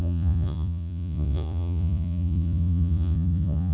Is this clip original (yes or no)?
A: no